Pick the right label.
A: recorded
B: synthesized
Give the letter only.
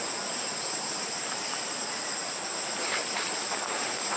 A